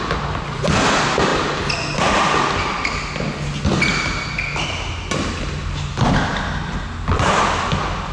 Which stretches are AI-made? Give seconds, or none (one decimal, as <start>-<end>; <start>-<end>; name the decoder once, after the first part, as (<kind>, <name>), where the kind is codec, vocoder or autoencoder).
none